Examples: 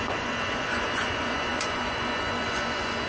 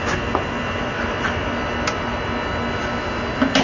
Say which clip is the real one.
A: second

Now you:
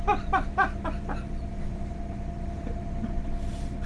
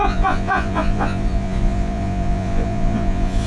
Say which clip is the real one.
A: first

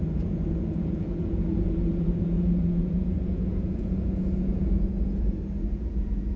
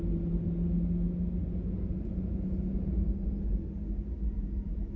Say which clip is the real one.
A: second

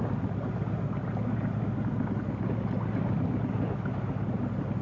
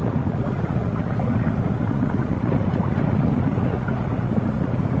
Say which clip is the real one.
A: first